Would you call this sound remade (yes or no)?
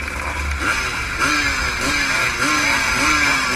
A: no